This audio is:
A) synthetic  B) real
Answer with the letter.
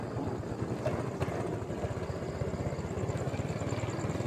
B